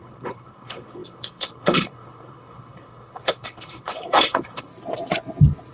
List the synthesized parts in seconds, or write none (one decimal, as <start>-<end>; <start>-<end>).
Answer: 0.0-4.7